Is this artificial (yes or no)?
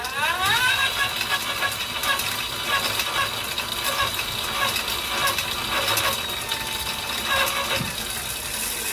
no